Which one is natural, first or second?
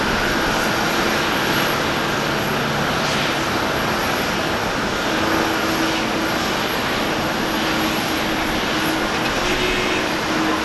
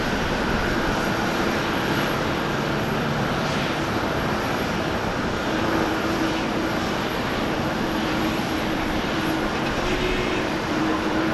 first